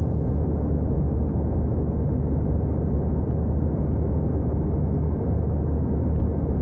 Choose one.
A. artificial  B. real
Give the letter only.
B